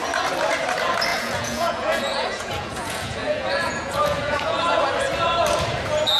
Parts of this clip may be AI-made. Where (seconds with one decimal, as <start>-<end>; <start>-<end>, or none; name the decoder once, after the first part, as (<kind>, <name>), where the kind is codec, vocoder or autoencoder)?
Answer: 1.1-4.8 (vocoder, Vocos)